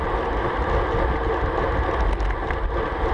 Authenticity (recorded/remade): recorded